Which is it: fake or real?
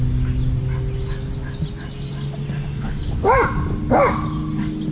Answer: real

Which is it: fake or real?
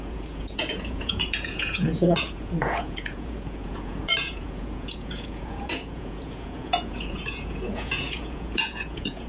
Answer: fake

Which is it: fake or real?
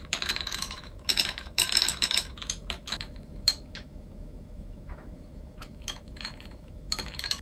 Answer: fake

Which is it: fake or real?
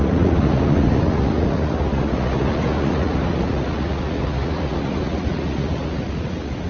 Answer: fake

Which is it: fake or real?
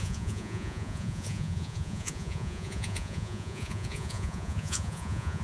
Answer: fake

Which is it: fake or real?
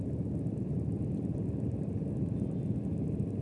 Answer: real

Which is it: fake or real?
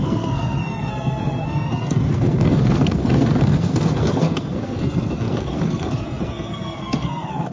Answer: fake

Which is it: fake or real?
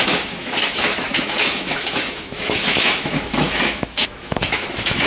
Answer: fake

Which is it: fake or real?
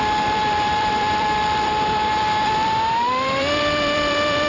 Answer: fake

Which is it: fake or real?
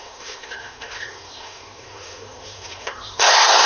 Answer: fake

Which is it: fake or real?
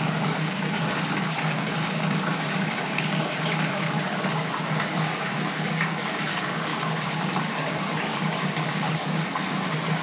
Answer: fake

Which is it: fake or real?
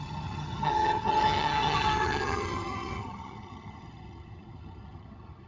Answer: fake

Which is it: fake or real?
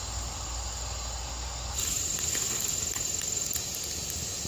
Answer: real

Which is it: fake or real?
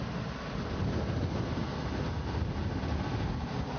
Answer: real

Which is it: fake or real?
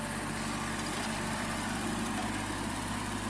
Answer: fake